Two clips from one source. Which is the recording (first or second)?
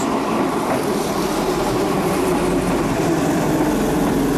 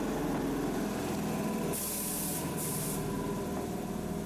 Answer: second